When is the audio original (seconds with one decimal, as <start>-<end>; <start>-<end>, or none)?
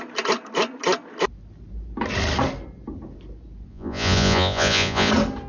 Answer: 0.0-3.7; 5.1-5.5